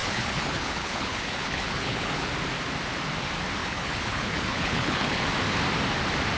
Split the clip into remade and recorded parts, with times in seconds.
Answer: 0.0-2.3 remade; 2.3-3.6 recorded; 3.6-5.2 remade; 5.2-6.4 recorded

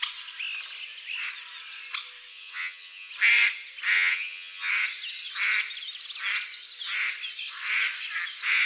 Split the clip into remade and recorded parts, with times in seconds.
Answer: 0.0-2.3 recorded; 2.3-3.1 remade; 3.1-3.9 recorded; 3.9-4.7 remade; 4.7-8.7 recorded

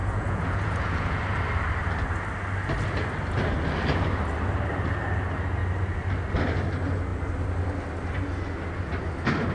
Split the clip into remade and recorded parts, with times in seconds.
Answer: 0.0-1.2 remade; 1.2-9.5 recorded

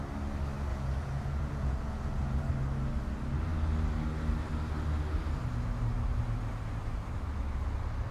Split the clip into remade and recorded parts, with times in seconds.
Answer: 0.0-0.7 recorded; 0.7-2.5 remade; 2.5-8.1 recorded

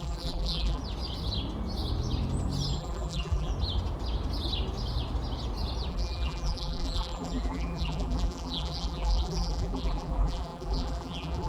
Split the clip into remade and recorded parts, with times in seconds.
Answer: 0.0-0.8 remade; 0.8-2.8 recorded; 2.8-3.5 remade; 3.5-5.9 recorded; 5.9-11.5 remade

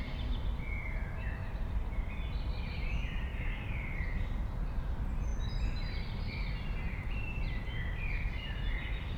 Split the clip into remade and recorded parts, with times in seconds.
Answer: 0.0-1.4 recorded; 1.4-2.1 remade; 2.1-3.3 recorded; 3.3-4.0 remade; 4.0-9.2 recorded

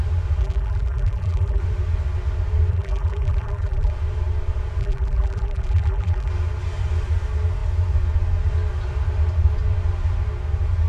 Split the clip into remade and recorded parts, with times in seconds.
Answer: 0.0-0.4 recorded; 0.4-1.6 remade; 1.6-2.7 recorded; 2.7-3.9 remade; 3.9-4.8 recorded; 4.8-6.3 remade; 6.3-10.9 recorded